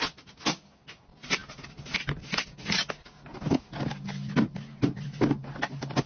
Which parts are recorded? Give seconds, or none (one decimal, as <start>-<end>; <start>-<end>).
0.0-6.1